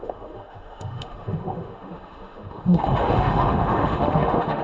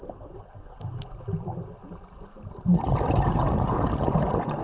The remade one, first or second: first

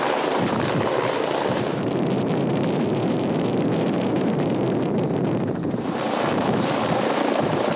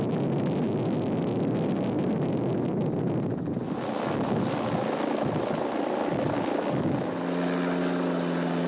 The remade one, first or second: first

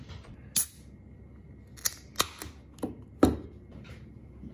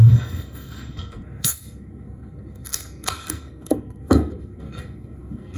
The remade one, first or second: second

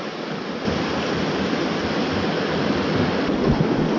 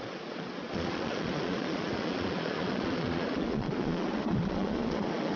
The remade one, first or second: second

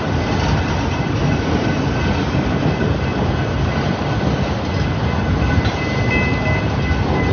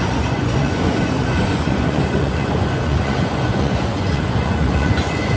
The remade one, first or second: second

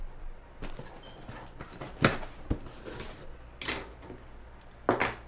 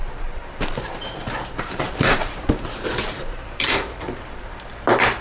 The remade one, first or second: second